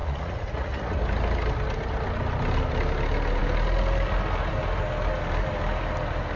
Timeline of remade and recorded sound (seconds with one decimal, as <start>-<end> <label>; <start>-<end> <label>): 0.0-1.0 remade; 1.0-6.4 recorded